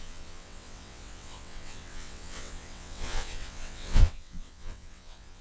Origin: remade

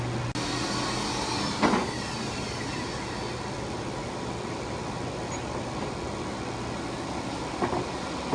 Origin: recorded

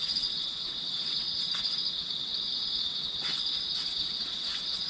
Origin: remade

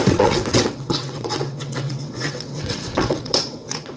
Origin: remade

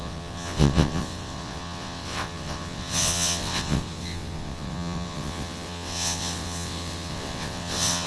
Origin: remade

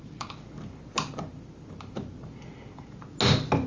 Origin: recorded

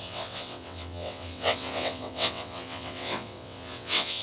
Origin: remade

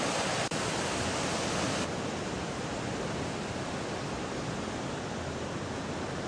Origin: recorded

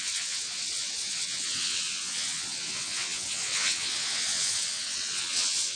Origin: remade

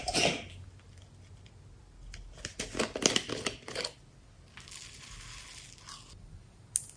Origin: recorded